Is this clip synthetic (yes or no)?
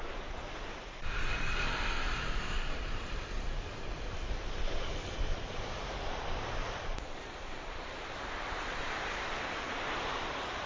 yes